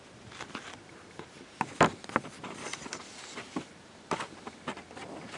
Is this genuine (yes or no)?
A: yes